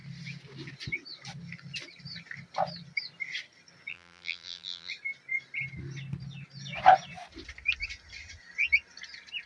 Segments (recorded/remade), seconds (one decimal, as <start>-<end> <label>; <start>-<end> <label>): 0.0-3.9 recorded; 3.9-4.9 remade; 4.9-9.5 recorded